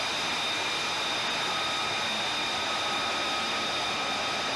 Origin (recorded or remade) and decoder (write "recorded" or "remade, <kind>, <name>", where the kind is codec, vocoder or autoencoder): recorded